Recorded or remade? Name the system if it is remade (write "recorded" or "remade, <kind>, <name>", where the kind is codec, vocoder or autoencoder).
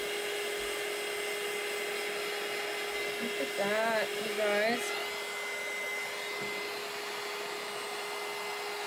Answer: recorded